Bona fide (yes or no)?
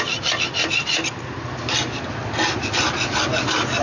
yes